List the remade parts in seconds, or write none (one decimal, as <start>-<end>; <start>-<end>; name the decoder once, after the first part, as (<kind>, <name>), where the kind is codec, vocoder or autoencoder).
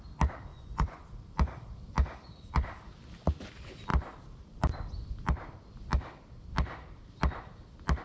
0.5-1.0 (vocoder, Vocos)